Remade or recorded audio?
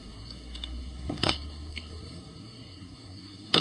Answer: remade